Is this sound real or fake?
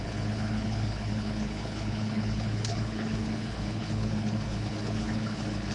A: fake